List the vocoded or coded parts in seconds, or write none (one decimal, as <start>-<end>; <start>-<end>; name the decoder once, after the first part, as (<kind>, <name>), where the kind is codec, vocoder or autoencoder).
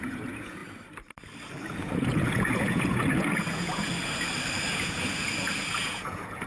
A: 0.0-0.6 (vocoder, Vocos); 1.7-3.9; 4.7-6.5